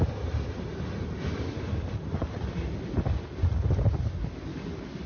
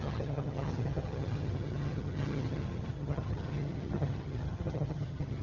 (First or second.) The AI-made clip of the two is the second